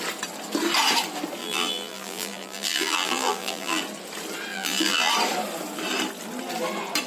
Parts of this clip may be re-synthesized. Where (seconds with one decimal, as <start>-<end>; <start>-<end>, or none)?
1.4-3.8; 4.5-5.1